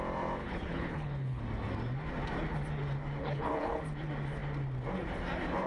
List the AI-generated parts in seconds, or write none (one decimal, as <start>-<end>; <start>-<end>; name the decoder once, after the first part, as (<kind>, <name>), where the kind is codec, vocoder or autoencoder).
0.4-1.4 (codec, HILCodec); 3.2-3.8